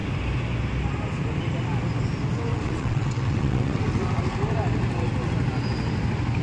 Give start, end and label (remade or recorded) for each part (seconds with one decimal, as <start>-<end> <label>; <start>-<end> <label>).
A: 0.0-2.5 recorded; 2.5-3.8 remade; 3.8-6.4 recorded